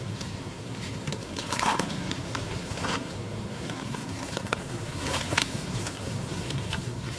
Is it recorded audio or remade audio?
remade